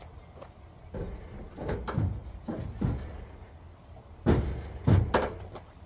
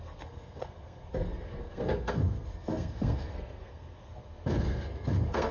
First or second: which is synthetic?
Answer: second